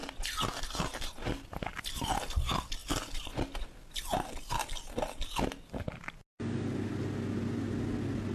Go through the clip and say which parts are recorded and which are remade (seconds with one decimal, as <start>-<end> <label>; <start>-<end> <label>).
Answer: 0.0-8.3 recorded